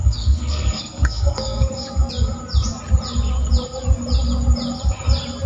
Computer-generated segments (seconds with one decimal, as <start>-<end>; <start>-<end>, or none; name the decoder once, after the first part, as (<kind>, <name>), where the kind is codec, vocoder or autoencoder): 0.0-2.1 (codec, SNAC)